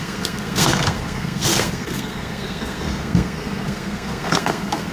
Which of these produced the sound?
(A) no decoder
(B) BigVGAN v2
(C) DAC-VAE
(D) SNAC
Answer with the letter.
D